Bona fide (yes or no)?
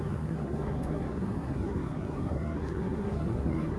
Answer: no